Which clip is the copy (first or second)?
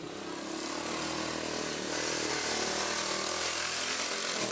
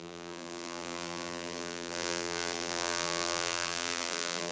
second